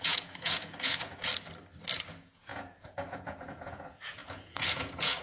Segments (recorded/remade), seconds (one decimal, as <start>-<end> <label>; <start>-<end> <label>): 0.0-1.3 remade; 1.3-2.1 recorded; 2.1-5.2 remade